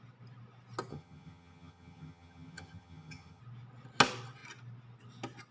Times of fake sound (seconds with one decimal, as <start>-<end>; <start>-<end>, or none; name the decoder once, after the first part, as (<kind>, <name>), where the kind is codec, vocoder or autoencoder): 0.9-3.4 (vocoder, HiFi-GAN)